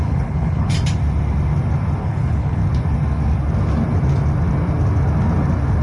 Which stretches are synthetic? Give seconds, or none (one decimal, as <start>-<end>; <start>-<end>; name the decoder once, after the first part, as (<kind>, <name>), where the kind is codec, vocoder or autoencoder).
0.0-0.7 (codec, HILCodec); 2.0-2.6